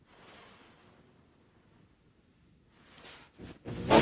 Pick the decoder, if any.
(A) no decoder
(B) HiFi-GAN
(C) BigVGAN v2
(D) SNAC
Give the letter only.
A